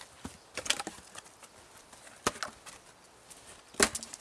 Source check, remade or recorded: recorded